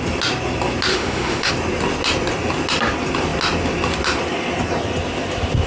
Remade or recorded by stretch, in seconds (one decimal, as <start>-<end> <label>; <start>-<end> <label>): 0.0-0.9 recorded; 0.9-1.5 remade; 1.5-5.7 recorded